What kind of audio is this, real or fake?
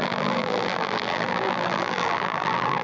fake